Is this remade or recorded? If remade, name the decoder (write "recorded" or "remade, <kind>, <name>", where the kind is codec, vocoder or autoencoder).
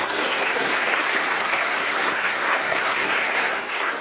remade, codec, SNAC